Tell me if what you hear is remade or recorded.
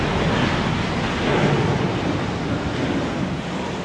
recorded